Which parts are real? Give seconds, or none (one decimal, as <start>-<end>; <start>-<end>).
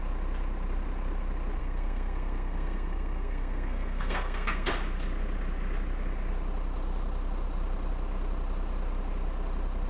0.0-1.6; 4.7-9.9